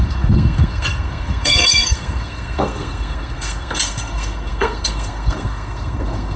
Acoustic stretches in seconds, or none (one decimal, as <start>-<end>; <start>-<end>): none